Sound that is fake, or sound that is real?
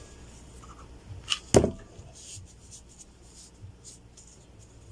real